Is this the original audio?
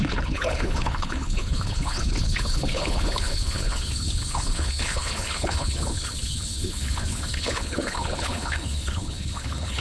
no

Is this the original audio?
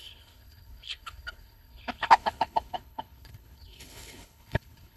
no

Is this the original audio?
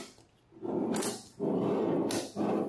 yes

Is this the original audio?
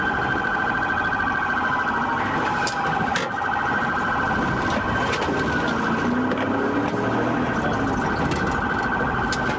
yes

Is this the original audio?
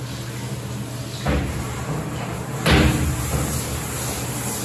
yes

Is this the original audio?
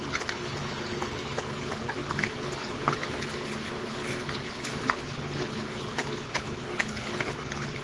no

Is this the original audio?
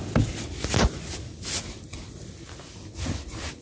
yes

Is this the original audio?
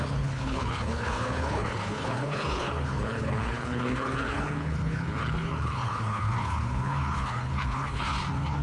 no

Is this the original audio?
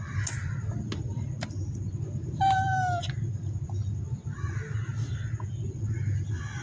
yes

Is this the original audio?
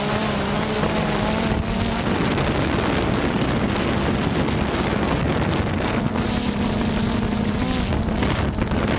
yes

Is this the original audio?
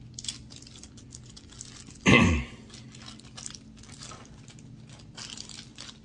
yes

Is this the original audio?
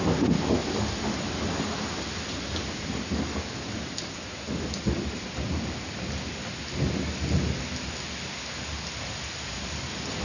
yes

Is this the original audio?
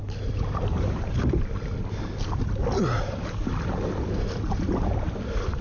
yes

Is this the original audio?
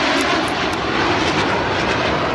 yes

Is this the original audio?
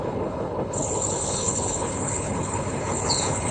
no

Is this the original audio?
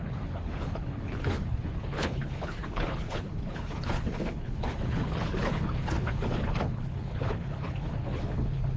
no